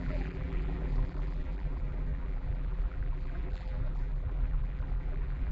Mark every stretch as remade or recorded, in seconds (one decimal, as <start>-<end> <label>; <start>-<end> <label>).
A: 0.0-5.5 remade